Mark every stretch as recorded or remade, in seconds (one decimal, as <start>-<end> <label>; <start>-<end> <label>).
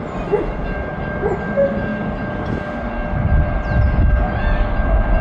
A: 0.0-5.2 recorded